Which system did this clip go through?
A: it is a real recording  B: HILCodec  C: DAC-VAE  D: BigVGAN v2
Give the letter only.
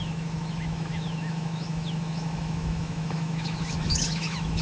C